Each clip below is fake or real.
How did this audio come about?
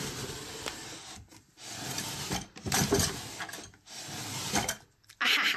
real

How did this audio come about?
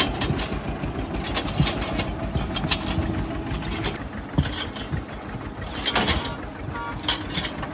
real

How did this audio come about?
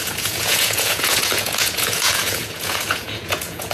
fake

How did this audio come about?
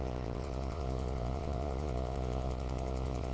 fake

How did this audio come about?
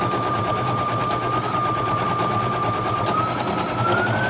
real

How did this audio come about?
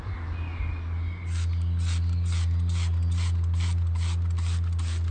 real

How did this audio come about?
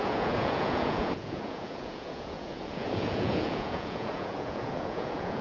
fake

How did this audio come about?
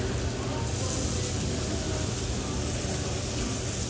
real